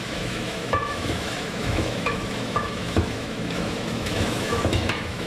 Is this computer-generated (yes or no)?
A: yes